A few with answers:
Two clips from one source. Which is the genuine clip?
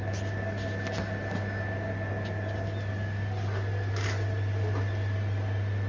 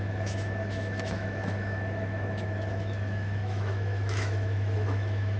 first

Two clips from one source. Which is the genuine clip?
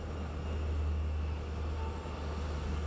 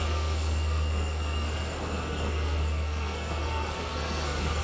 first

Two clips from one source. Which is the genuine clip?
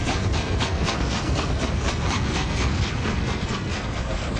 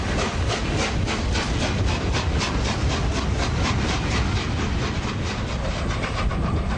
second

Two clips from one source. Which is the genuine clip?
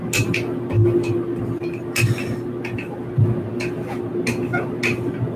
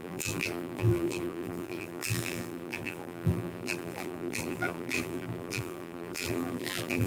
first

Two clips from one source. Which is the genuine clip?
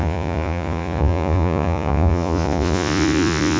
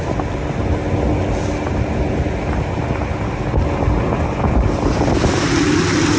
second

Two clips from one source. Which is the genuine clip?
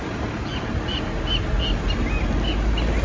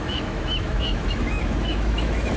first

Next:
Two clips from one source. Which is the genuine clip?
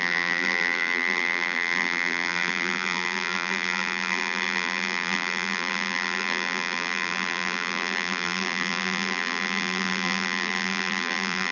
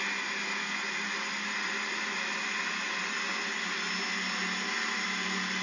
second